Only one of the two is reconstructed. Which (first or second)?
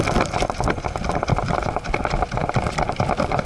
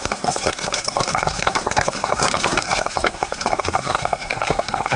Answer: second